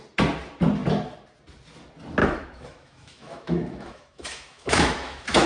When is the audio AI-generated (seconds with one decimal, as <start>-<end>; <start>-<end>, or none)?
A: 2.2-5.5